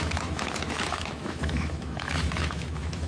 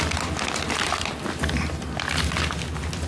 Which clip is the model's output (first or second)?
first